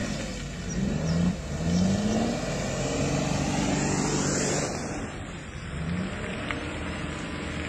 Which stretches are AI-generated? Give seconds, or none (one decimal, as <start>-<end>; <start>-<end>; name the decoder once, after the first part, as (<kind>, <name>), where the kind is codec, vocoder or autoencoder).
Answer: none